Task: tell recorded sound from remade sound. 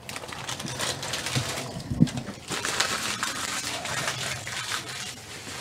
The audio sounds remade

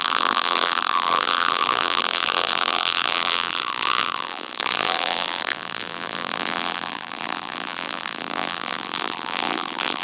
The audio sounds remade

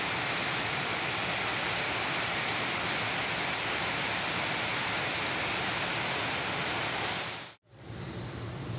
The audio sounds recorded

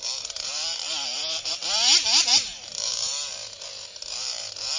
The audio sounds remade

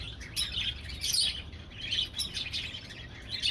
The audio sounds remade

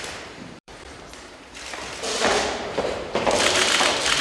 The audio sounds remade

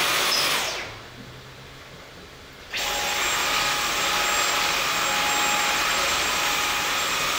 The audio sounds recorded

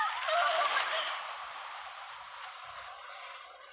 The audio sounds recorded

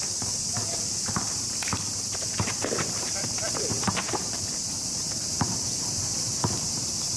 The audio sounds remade